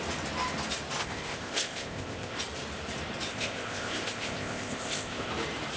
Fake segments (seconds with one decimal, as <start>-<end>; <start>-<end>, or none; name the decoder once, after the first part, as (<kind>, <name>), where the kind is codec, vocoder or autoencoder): 1.0-2.4 (codec, ZipCodec); 3.3-5.3